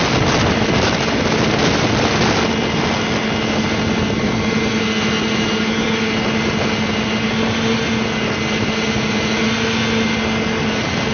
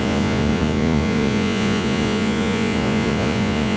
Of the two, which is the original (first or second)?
first